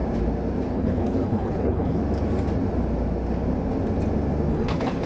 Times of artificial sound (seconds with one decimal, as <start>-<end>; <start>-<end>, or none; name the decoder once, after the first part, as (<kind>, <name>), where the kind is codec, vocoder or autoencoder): 0.7-2.0 (codec, HILCodec); 4.5-5.1